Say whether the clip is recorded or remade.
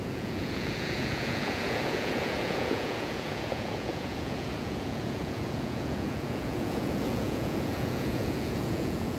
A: remade